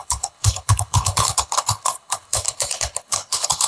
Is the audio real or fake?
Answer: fake